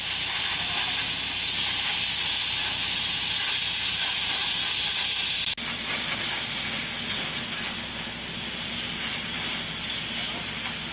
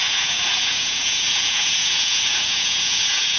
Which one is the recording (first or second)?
first